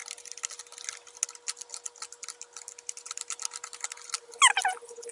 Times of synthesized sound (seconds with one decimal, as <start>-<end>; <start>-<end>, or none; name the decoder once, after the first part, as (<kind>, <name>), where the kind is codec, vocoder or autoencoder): none